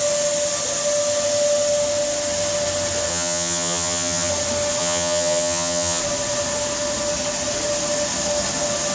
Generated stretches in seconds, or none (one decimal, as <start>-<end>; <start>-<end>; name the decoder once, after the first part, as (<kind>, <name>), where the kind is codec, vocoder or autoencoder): 3.1-4.3 (vocoder, HiFi-GAN); 4.8-6.0